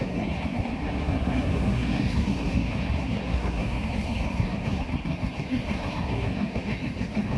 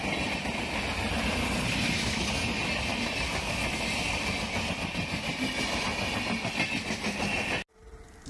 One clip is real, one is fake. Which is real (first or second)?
second